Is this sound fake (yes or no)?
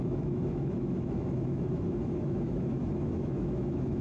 yes